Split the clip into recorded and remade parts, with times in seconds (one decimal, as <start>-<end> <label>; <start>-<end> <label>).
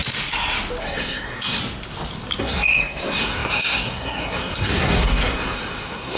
0.0-0.8 recorded; 0.8-1.6 remade; 1.6-2.4 recorded; 2.4-6.2 remade